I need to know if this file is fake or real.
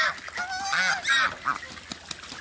real